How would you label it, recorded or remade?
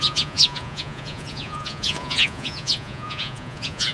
remade